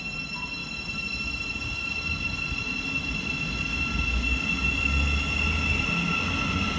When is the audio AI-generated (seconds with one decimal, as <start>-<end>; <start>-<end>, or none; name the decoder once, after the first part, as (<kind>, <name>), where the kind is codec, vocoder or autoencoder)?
none